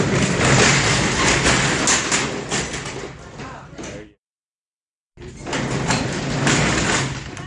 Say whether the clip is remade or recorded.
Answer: recorded